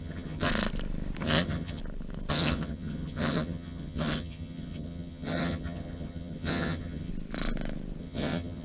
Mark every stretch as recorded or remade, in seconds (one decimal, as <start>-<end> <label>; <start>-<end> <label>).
0.0-0.5 remade; 0.5-1.2 recorded; 1.2-1.8 remade; 1.8-2.3 recorded; 2.3-7.1 remade; 7.1-8.0 recorded; 8.0-8.6 remade